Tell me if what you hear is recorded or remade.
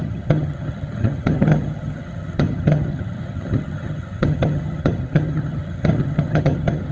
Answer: remade